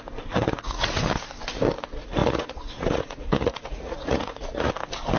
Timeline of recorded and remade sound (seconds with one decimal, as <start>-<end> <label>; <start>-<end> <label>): 0.0-0.4 recorded; 0.4-0.9 remade; 0.9-2.2 recorded; 2.2-4.7 remade; 4.7-5.2 recorded